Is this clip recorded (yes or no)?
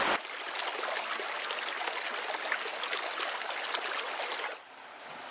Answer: yes